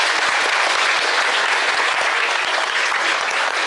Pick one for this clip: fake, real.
fake